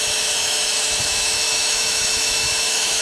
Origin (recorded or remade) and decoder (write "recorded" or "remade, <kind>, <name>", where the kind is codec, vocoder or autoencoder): remade, autoencoder, DAC-VAE